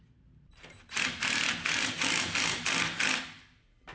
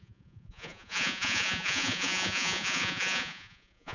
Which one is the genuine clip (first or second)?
first